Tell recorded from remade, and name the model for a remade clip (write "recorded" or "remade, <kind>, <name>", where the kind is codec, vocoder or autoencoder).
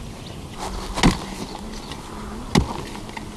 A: recorded